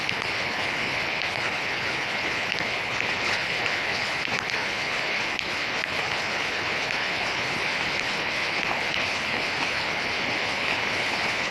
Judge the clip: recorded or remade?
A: remade